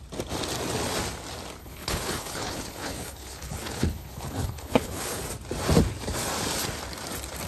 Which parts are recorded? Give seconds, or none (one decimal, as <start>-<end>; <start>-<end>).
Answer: 0.0-1.6; 5.2-7.5